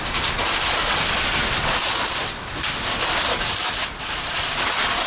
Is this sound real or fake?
real